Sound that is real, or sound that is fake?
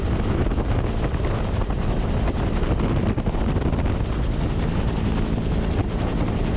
real